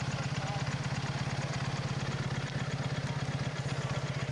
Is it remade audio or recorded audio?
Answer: recorded